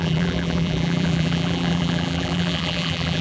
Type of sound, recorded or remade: remade